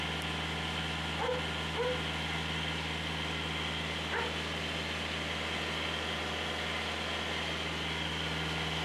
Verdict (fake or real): real